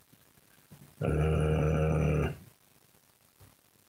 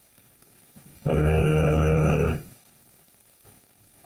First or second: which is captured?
first